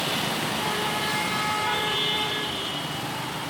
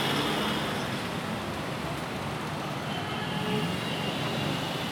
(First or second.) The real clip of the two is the second